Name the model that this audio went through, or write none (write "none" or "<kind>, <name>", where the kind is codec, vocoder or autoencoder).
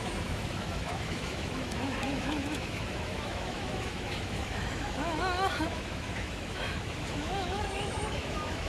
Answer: autoencoder, DAC-VAE